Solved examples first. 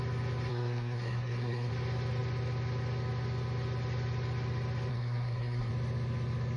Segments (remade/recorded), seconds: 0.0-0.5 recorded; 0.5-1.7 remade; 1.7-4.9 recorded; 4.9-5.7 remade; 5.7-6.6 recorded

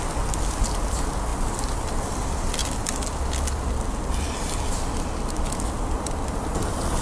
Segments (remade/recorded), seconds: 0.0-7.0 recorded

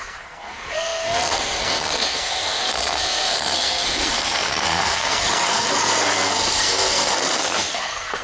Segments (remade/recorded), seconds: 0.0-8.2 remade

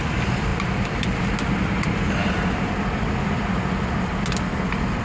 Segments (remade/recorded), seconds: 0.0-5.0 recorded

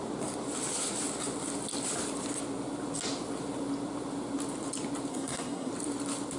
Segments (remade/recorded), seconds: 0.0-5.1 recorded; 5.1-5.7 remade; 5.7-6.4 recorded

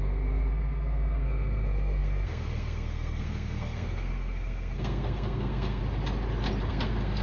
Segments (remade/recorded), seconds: 0.0-5.8 remade; 5.8-6.7 recorded; 6.7-7.2 remade

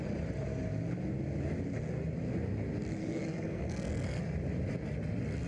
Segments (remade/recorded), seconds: 0.0-2.9 recorded; 2.9-4.2 remade; 4.2-5.5 recorded